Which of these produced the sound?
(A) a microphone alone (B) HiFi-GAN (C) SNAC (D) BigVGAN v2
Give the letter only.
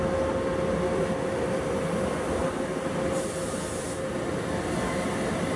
A